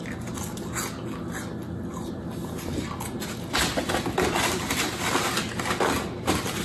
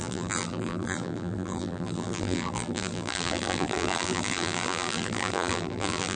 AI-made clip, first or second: second